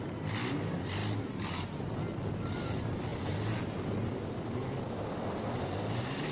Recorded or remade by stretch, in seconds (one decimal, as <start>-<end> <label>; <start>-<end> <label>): 0.0-6.3 recorded